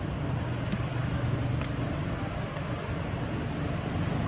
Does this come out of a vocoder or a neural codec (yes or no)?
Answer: no